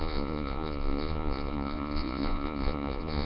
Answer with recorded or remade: remade